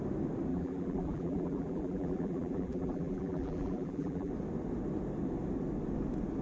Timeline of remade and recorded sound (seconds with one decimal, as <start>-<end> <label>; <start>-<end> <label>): 0.0-0.5 recorded; 0.5-4.3 remade; 4.3-6.4 recorded